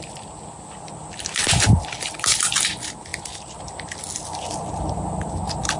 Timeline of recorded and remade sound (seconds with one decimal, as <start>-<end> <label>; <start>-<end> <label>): 0.0-5.8 recorded